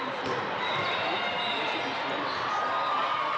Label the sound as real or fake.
real